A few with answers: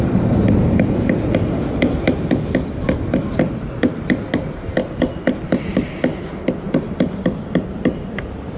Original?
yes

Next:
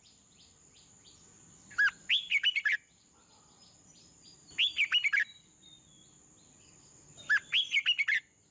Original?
yes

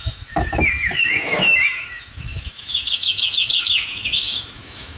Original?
no